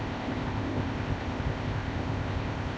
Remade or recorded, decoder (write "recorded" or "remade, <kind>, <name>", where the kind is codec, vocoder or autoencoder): remade, codec, ZipCodec